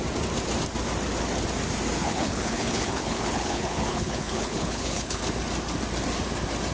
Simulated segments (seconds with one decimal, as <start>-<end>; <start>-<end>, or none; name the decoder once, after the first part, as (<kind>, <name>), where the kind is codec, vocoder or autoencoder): 2.0-5.2 (codec, HILCodec)